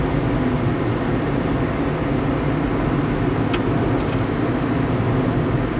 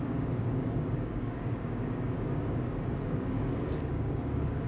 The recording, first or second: first